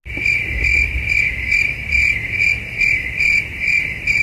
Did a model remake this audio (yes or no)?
no